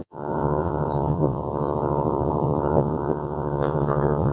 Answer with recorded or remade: remade